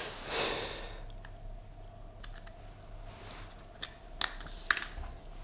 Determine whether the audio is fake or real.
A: real